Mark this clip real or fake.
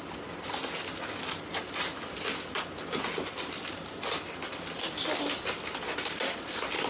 real